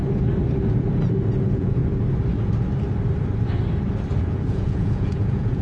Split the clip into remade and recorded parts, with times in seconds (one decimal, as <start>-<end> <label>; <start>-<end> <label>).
0.0-1.4 recorded; 1.4-1.8 remade; 1.8-4.2 recorded; 4.2-5.6 remade